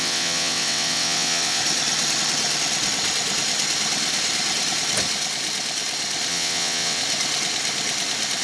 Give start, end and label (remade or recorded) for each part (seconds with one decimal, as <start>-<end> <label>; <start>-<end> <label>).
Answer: 0.0-1.6 remade; 1.6-6.3 recorded; 6.3-7.0 remade; 7.0-8.4 recorded